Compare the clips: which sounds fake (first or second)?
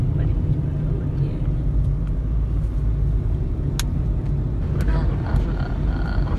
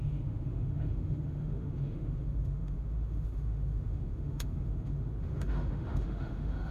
second